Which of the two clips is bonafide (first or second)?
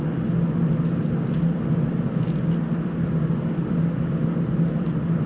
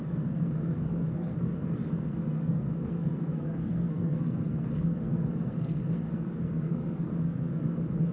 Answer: first